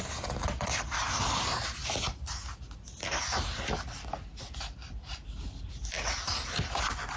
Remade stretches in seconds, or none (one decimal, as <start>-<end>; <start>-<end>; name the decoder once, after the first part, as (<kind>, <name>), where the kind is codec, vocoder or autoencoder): none